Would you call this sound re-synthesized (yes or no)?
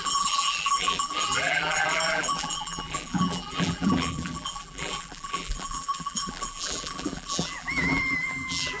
yes